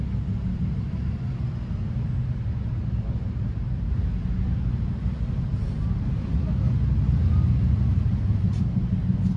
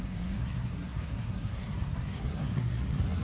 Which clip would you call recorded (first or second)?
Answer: first